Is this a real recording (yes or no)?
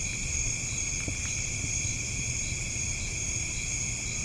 yes